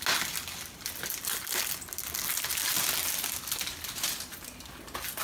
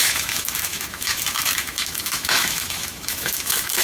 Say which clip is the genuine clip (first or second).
first